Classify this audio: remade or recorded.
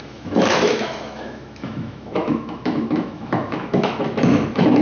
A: remade